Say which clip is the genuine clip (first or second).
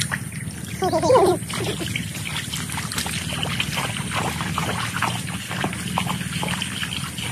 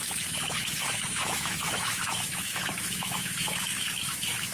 first